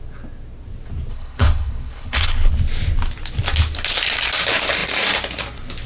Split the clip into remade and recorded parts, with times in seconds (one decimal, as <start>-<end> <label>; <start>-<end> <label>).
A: 0.0-1.1 recorded; 1.1-2.5 remade; 2.5-5.9 recorded